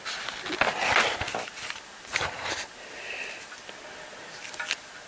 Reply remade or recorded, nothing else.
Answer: recorded